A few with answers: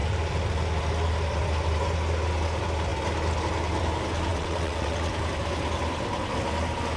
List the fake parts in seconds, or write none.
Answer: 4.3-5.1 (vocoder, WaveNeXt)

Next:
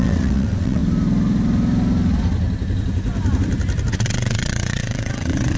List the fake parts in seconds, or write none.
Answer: 0.0-0.8 (vocoder, WaveNeXt); 3.9-5.6

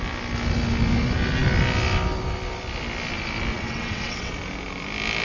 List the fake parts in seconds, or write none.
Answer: 3.5-4.3 (vocoder, WaveNeXt)

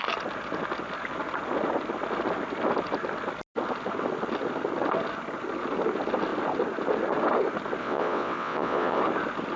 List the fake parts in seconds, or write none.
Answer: 7.8-9.0 (vocoder, WaveNeXt)

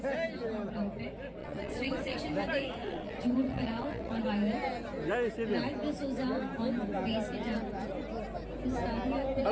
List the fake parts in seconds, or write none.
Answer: 1.4-2.2 (vocoder, WaveNeXt); 2.8-4.2

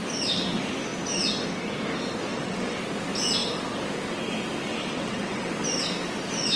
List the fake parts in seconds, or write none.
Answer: 2.3-2.8 (vocoder, WaveNeXt); 4.7-5.5

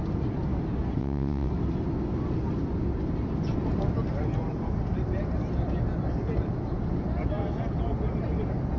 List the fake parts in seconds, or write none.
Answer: 1.0-1.5 (vocoder, WaveNeXt)

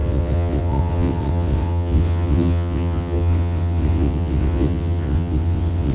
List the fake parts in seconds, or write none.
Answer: 0.0-5.9 (vocoder, WaveNeXt)